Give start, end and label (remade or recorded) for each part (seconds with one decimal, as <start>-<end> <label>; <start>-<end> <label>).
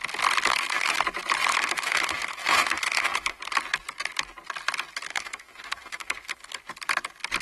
0.0-0.5 recorded; 0.5-1.0 remade; 1.0-1.5 recorded; 1.5-3.4 remade; 3.4-5.1 recorded; 5.1-6.3 remade; 6.3-7.4 recorded